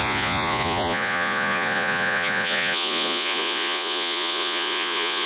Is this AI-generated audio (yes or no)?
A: yes